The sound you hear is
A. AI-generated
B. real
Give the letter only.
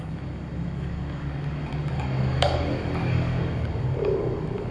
A